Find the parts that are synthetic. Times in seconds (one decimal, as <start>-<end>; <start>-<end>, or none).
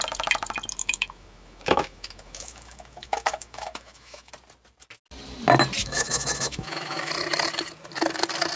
0.8-4.3; 5.8-7.1